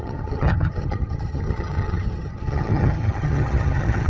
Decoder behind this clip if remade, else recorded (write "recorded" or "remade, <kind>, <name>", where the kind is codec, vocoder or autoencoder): remade, vocoder, HiFi-GAN